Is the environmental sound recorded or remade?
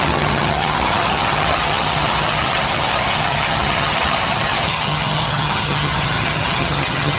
remade